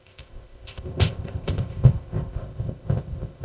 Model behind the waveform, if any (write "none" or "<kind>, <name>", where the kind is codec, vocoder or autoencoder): codec, ZipCodec